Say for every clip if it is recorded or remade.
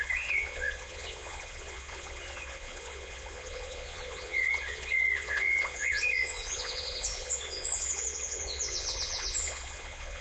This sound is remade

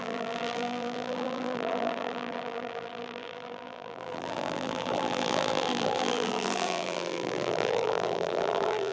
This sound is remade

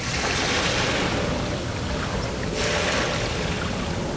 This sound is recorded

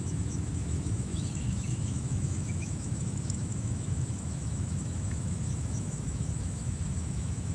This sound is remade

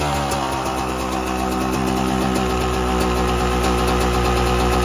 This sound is recorded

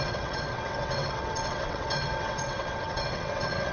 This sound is remade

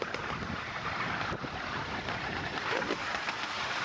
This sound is remade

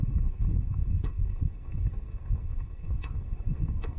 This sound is remade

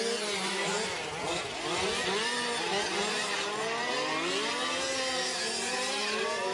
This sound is recorded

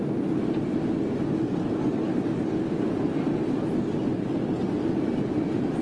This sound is recorded